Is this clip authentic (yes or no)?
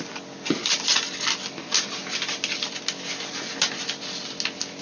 yes